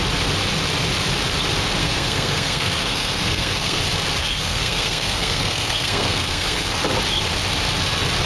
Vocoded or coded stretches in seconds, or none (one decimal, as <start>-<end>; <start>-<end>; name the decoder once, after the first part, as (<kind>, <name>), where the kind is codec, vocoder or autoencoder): 1.8-3.8 (codec, SNAC); 4.2-6.8